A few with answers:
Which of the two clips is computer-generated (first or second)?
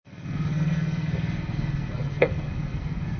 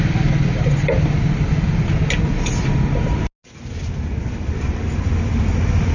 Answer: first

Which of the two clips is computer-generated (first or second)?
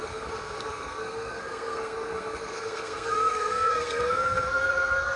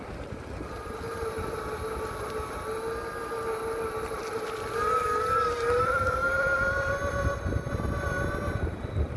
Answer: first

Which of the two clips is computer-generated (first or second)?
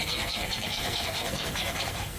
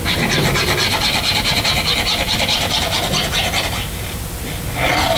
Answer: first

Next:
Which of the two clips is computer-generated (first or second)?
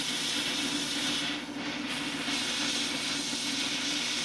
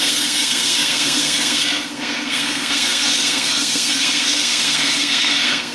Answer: second